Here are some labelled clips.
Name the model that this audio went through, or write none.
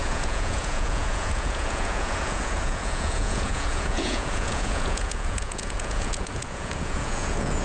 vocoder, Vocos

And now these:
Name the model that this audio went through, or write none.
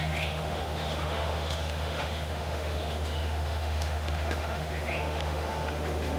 autoencoder, DAC-VAE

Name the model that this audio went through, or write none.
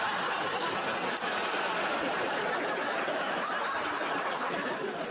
none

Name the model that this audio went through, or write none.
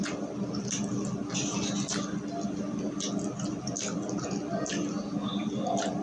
none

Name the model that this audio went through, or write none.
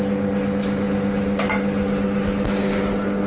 none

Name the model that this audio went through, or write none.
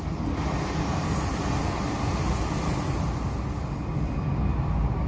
none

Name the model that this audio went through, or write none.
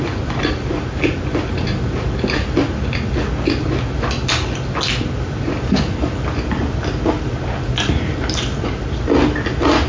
none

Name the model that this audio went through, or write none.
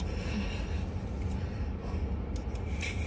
none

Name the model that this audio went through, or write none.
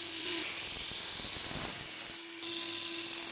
none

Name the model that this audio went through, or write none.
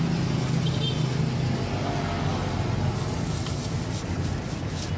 none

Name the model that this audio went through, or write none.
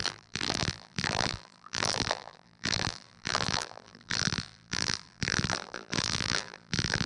vocoder, BigVGAN v2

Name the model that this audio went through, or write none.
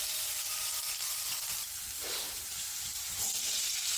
vocoder, BigVGAN v2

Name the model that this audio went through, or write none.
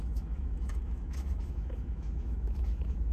autoencoder, DAC-VAE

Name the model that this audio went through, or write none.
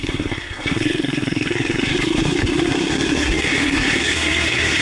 codec, SNAC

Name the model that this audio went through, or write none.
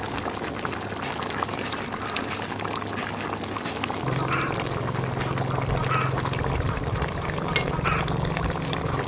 none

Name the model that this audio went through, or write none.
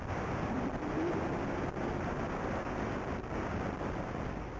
none